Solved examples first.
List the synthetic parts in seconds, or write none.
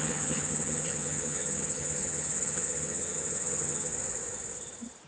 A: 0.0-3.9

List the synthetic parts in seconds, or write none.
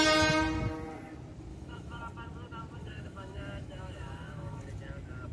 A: 1.5-2.0; 2.8-4.7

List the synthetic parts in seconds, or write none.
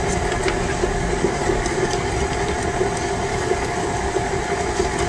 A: 0.8-2.1; 3.3-4.3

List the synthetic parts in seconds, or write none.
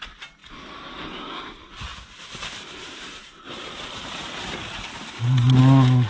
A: 1.9-5.6